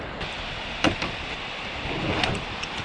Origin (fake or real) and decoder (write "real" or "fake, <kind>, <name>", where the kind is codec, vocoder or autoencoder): real